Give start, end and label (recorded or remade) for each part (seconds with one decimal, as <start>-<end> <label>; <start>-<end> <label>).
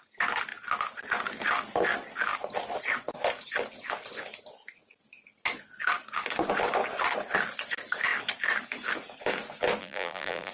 0.0-9.8 recorded; 9.8-10.5 remade